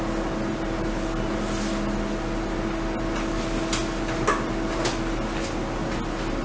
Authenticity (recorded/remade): recorded